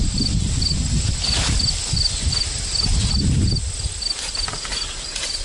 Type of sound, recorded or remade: recorded